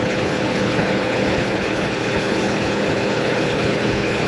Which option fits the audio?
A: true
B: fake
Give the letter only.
B